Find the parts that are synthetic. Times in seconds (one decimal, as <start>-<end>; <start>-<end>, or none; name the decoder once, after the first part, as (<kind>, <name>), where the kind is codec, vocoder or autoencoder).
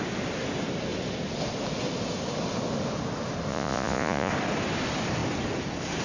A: 3.5-4.3 (vocoder, Vocos)